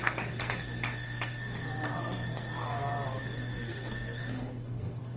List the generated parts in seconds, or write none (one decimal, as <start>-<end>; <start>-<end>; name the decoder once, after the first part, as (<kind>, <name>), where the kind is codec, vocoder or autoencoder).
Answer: 0.0-5.2 (codec, SNAC)

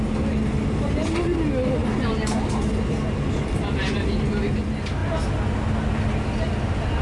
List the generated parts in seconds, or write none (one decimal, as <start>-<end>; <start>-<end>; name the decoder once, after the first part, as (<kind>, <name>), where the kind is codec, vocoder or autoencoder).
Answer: none

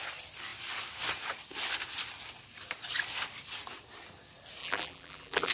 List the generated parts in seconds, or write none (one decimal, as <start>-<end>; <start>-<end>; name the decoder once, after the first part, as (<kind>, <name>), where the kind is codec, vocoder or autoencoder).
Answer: 4.6-5.5 (vocoder, BigVGAN v2)

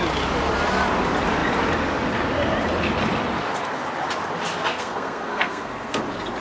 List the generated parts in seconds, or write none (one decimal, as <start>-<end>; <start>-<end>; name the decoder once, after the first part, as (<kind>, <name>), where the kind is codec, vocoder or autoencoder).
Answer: 4.7-6.0 (codec, SNAC)

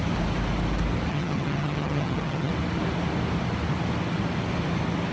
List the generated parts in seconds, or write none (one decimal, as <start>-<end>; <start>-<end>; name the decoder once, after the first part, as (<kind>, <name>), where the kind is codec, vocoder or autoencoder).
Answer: 1.1-2.5 (vocoder, HiFi-GAN)

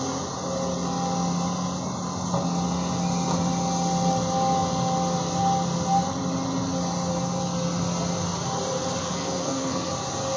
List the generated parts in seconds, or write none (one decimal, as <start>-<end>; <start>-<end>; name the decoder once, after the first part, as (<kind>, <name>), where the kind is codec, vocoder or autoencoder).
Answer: 9.0-9.9 (codec, SNAC)

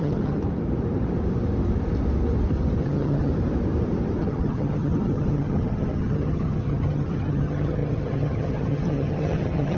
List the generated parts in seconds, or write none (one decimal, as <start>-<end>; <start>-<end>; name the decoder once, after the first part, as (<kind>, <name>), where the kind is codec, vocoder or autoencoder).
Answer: 0.0-0.4 (vocoder, HiFi-GAN); 2.8-3.3; 4.2-9.8